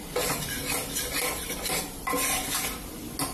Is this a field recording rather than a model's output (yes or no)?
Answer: yes